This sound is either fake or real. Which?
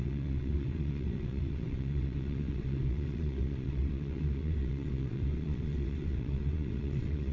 fake